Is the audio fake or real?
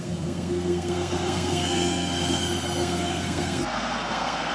fake